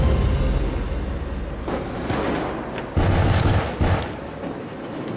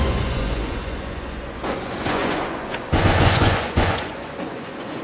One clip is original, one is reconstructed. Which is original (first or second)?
first